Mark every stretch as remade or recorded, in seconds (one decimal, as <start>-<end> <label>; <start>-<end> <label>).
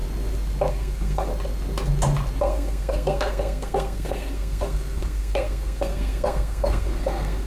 0.0-0.7 recorded; 0.7-1.3 remade; 1.3-2.4 recorded; 2.4-7.5 remade